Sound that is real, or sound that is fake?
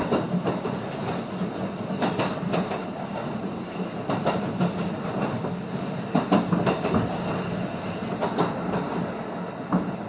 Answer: real